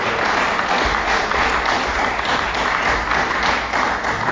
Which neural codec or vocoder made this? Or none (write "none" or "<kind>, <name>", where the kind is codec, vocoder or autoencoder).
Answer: none